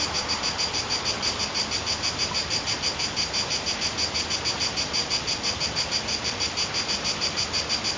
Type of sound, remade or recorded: recorded